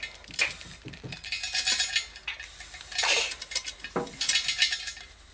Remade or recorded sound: recorded